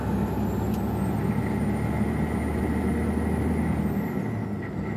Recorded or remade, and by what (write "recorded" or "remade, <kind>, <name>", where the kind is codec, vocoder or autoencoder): recorded